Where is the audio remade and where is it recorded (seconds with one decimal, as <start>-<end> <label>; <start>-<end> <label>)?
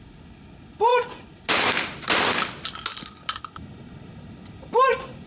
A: 0.0-5.3 recorded